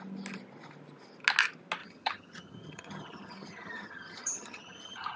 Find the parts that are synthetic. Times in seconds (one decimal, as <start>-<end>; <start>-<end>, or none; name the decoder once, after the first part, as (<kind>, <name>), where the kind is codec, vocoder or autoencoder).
1.8-5.2 (vocoder, HiFi-GAN)

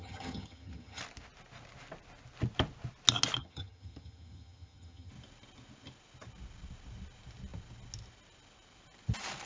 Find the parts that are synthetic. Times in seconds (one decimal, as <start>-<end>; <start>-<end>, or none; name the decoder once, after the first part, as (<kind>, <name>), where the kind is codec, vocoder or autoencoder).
0.0-1.0 (vocoder, HiFi-GAN); 3.4-5.1

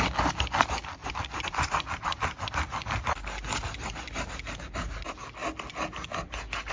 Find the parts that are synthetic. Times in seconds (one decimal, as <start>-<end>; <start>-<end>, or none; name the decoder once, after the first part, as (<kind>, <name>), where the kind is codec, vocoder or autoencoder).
none

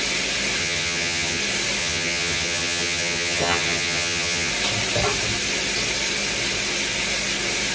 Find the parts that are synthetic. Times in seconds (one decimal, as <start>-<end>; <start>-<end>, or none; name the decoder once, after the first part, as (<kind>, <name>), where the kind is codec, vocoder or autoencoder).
0.6-1.4 (vocoder, HiFi-GAN); 1.8-4.5